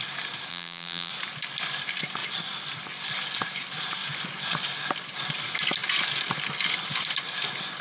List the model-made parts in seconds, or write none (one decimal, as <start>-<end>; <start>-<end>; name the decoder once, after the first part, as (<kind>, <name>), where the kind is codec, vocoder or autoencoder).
0.5-1.1 (vocoder, BigVGAN v2)